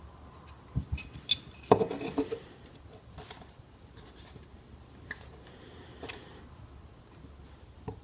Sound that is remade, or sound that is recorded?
recorded